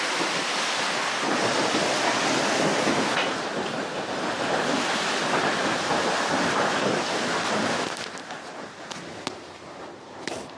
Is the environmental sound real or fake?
real